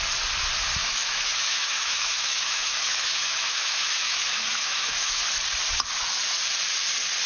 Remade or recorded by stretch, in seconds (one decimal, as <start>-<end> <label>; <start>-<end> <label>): 0.0-0.8 recorded; 0.8-5.2 remade; 5.2-7.3 recorded